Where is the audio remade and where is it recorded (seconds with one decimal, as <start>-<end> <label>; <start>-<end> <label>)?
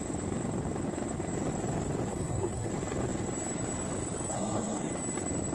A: 0.0-2.1 recorded; 2.1-2.7 remade; 2.7-4.3 recorded; 4.3-4.9 remade; 4.9-5.5 recorded